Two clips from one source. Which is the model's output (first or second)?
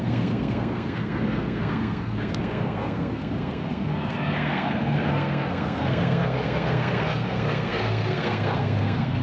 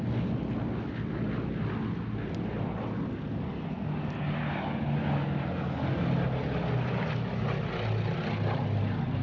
first